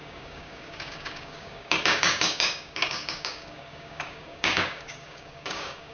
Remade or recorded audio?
remade